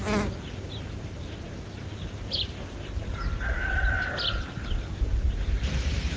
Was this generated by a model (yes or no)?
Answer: no